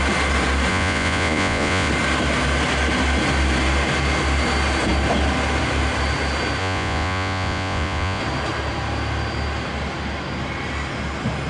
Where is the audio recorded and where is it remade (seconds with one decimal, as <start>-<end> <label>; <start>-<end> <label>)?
0.0-0.7 recorded; 0.7-1.9 remade; 1.9-6.6 recorded; 6.6-8.2 remade; 8.2-11.5 recorded